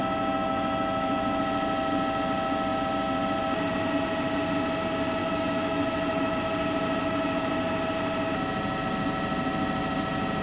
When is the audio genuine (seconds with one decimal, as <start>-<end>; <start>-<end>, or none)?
1.4-5.2; 6.4-7.0; 7.5-10.4